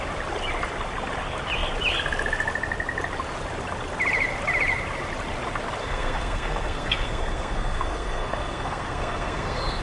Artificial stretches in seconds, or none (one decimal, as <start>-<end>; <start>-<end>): 5.8-9.8